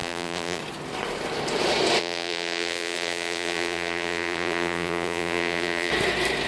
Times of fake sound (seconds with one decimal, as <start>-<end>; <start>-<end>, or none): 0.0-0.6; 2.0-5.9